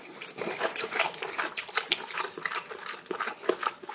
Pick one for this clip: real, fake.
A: real